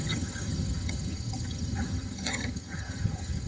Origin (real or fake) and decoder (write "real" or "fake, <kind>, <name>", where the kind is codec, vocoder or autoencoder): fake, vocoder, HiFi-GAN